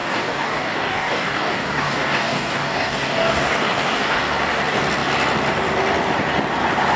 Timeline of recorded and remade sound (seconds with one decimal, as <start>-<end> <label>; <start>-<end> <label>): 0.0-4.2 remade; 4.2-7.0 recorded